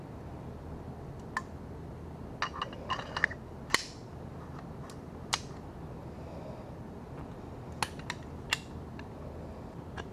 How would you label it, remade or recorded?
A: recorded